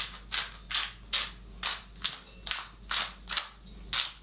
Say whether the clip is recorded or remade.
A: recorded